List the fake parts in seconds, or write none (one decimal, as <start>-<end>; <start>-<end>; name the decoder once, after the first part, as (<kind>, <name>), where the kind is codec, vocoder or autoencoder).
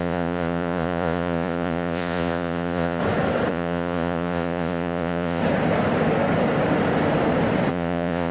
0.0-3.0 (vocoder, Vocos); 3.5-5.4; 7.7-8.3